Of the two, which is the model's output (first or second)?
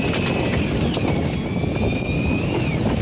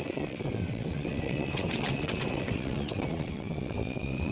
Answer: second